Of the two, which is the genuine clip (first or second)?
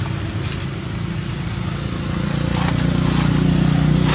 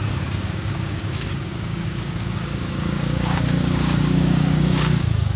first